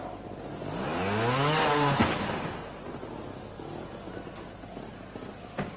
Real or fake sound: real